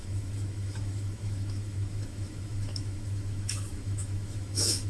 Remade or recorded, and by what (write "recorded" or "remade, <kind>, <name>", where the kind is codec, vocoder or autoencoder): remade, autoencoder, DAC-VAE